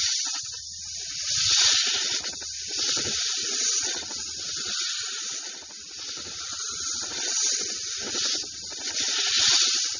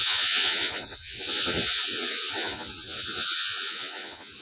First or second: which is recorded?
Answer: first